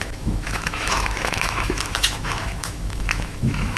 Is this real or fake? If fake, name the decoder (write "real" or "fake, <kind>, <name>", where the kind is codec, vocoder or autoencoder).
fake, autoencoder, DAC-VAE